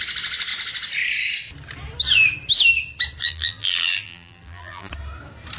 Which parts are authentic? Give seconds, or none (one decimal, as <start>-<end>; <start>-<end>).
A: 0.0-3.2; 4.9-5.6